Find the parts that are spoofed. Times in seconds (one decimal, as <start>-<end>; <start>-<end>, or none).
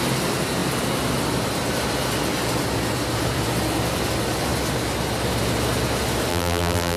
6.3-7.0